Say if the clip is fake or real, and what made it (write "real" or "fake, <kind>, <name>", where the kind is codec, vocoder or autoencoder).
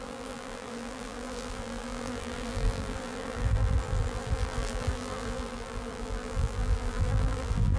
fake, vocoder, BigVGAN v2